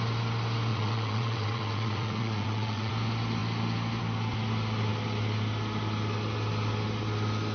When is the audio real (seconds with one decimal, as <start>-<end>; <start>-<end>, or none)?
0.0-0.7; 2.9-7.5